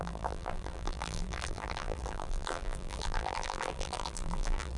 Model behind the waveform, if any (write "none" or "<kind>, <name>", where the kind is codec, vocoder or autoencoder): vocoder, BigVGAN v2